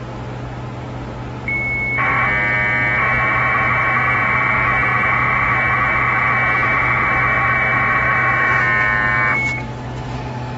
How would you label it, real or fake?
real